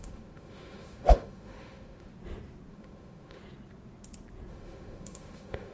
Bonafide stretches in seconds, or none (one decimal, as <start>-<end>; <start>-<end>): 2.1-2.7; 3.4-4.5